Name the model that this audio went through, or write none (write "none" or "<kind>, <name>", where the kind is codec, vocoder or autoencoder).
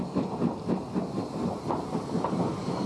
none